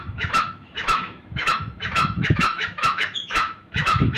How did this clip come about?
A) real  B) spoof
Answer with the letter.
B